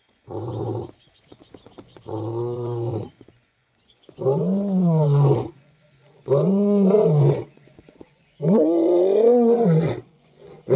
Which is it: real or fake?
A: fake